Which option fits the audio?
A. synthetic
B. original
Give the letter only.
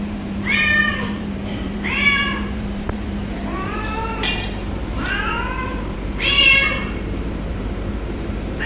A